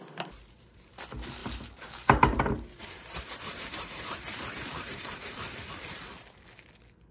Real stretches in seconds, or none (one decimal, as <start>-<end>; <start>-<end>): 0.0-1.4; 5.7-7.1